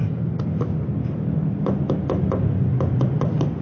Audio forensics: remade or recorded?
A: recorded